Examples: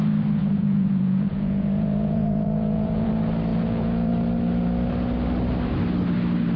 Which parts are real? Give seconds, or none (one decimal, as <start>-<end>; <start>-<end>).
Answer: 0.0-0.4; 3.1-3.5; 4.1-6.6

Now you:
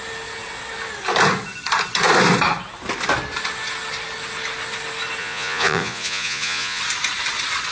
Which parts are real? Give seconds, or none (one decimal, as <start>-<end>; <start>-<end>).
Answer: 0.0-5.2; 6.8-7.7

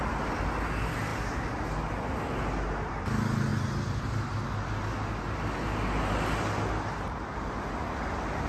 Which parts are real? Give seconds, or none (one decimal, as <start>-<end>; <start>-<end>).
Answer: 0.0-8.5

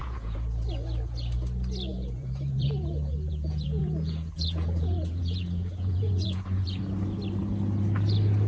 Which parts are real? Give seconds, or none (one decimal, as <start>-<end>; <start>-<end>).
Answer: 0.7-1.9; 6.8-8.5